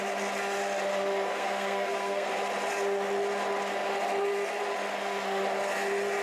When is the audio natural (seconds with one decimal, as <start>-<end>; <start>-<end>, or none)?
0.0-1.3; 2.3-6.2